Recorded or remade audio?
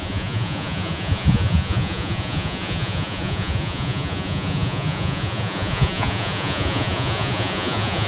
remade